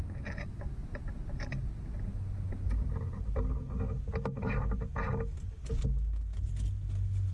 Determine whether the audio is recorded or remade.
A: recorded